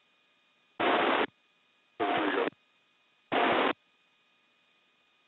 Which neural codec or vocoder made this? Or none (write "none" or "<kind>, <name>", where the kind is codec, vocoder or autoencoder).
none